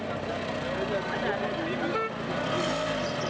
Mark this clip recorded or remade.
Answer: recorded